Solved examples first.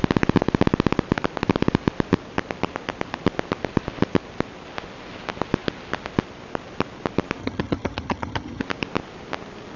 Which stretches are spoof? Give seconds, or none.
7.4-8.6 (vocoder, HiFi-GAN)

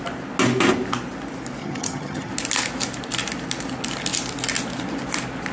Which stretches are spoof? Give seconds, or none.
1.6-2.3 (vocoder, HiFi-GAN)